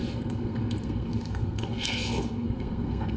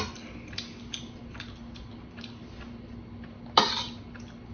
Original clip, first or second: second